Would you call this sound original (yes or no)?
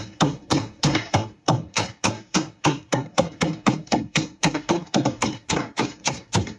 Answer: no